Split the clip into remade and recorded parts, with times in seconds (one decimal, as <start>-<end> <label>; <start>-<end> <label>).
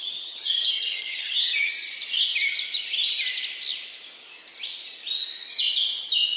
0.0-1.7 remade; 1.7-6.4 recorded